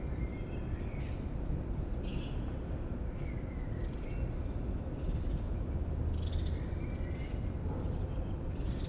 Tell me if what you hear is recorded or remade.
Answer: recorded